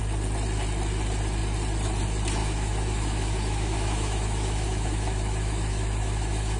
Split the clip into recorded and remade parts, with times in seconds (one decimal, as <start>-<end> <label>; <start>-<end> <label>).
0.0-2.4 recorded; 2.4-6.6 remade